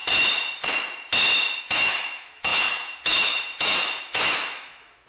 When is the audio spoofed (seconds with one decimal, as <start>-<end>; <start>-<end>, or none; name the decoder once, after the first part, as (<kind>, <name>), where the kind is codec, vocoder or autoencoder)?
1.6-5.1 (autoencoder, DAC-VAE)